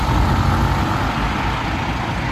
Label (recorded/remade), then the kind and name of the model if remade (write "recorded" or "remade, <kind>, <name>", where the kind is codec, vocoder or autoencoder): recorded